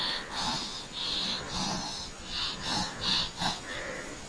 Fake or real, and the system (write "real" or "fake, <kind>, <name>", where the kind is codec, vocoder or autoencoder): fake, vocoder, Vocos